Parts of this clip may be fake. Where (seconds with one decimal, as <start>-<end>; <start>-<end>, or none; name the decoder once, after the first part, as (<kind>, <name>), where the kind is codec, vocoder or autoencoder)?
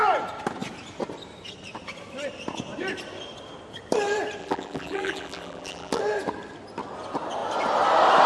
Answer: 4.4-6.0 (vocoder, BigVGAN v2)